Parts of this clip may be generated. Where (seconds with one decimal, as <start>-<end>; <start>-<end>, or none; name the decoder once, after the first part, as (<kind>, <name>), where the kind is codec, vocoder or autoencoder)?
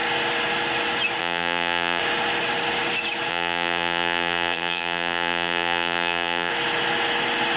1.2-2.0 (vocoder, BigVGAN v2); 3.3-6.5